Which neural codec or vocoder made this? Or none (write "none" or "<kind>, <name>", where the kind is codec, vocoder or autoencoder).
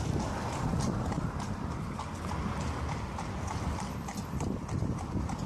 none